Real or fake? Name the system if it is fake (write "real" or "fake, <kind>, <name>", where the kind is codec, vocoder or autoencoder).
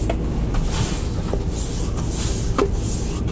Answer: real